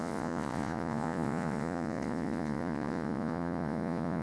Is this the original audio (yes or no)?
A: no